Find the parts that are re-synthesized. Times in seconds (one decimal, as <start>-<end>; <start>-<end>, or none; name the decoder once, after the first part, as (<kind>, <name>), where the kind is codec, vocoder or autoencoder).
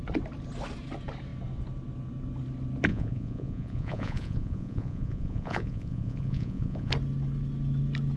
2.9-6.9 (vocoder, Vocos)